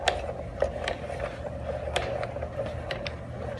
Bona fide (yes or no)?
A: yes